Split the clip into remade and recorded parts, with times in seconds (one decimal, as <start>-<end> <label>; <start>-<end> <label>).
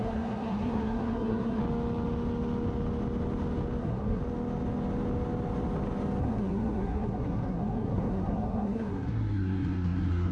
0.0-1.6 remade; 1.6-3.8 recorded; 3.8-4.2 remade; 4.2-6.2 recorded; 6.2-10.3 remade